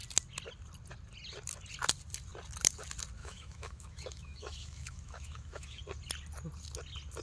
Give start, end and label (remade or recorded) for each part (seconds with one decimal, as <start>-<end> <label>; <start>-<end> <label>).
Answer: 0.0-3.2 recorded; 3.2-5.8 remade; 5.8-7.2 recorded